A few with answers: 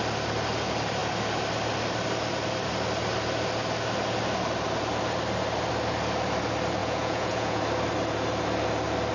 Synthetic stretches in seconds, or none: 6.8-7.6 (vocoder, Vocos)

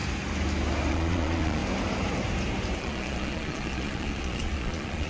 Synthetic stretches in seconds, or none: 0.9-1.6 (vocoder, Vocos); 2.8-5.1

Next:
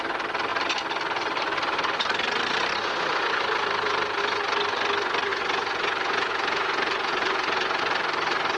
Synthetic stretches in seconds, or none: 5.3-7.8 (vocoder, Vocos)

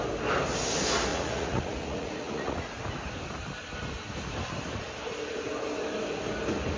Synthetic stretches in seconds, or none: 1.1-2.8 (vocoder, Vocos)